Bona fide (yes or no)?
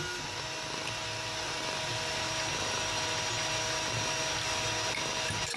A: yes